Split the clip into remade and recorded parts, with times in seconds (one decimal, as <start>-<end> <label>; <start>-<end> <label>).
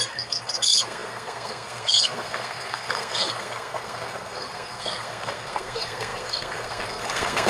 0.0-7.5 remade